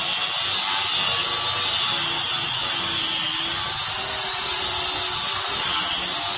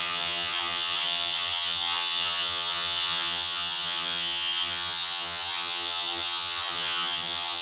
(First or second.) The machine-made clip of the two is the second